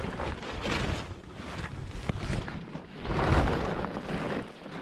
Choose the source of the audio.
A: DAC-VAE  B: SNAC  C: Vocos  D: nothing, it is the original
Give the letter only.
D